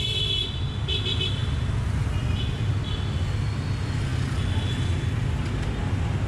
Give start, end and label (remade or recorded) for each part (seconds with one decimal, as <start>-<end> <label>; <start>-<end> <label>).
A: 0.0-6.3 recorded